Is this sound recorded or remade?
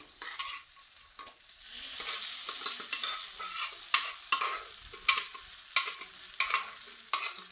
recorded